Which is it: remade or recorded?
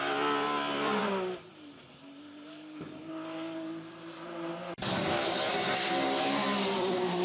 remade